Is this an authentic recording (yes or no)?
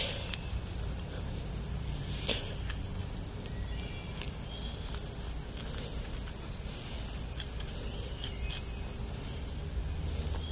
yes